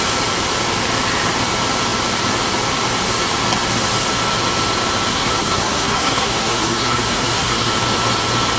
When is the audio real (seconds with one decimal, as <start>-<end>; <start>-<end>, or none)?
0.0-5.1; 7.7-8.6